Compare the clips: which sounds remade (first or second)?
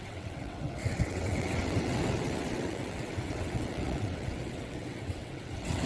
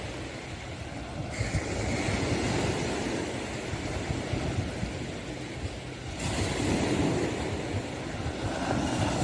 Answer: first